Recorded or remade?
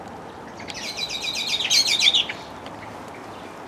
recorded